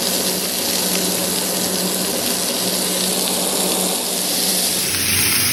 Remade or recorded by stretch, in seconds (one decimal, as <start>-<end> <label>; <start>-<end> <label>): 0.0-5.5 recorded